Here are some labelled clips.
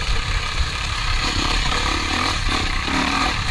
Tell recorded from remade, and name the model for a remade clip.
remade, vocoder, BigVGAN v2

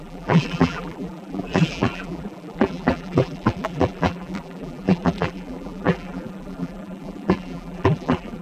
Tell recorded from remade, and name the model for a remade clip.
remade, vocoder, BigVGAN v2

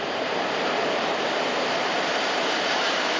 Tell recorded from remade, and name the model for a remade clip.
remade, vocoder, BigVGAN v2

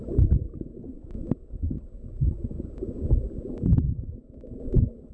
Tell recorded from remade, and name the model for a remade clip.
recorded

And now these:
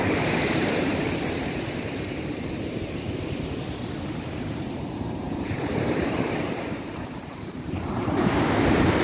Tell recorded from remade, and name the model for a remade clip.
remade, vocoder, BigVGAN v2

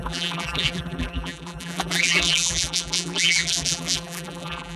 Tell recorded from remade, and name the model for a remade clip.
remade, vocoder, BigVGAN v2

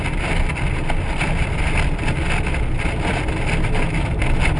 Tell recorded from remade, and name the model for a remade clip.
remade, vocoder, BigVGAN v2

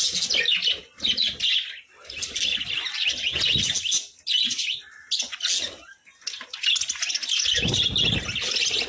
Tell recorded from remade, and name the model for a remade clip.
recorded